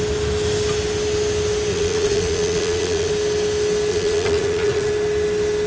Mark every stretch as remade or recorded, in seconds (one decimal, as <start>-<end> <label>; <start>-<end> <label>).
0.0-1.7 recorded; 1.7-3.1 remade; 3.1-3.9 recorded; 3.9-4.9 remade; 4.9-5.7 recorded